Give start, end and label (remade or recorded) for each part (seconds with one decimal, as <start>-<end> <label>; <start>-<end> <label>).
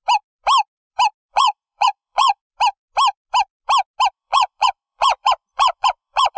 0.0-1.3 recorded; 1.3-2.4 remade; 2.4-4.1 recorded; 4.1-6.4 remade